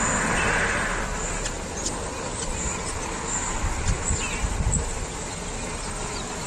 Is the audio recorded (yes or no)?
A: yes